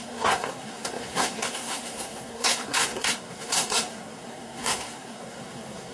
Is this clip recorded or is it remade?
remade